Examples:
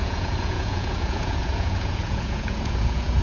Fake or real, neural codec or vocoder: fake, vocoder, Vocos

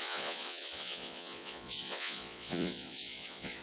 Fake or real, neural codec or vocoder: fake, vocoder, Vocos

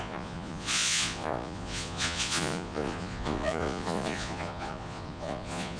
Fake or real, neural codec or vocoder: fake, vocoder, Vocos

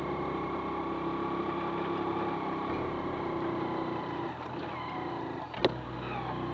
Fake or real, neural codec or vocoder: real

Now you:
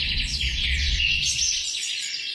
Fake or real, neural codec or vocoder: fake, vocoder, Vocos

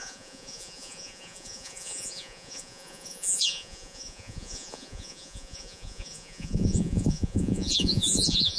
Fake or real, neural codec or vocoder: fake, vocoder, Vocos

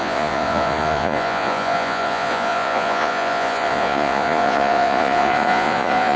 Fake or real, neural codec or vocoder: fake, vocoder, Vocos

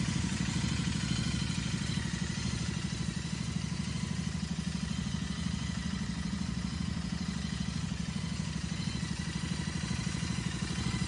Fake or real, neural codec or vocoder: fake, vocoder, Vocos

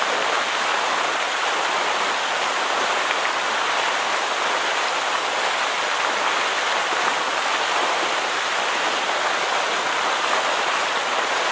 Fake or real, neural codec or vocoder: real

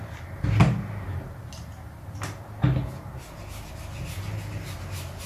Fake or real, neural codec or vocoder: real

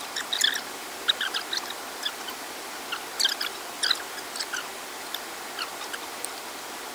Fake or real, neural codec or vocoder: real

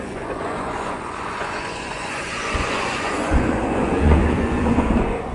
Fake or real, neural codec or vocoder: fake, vocoder, Vocos